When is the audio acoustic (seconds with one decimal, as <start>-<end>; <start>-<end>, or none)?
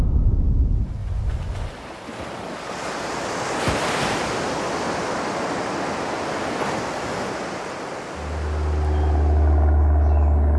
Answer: 0.0-1.0; 1.6-10.6